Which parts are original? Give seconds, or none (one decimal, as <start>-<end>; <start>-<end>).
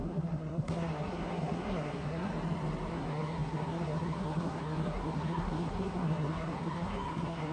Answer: 2.3-2.9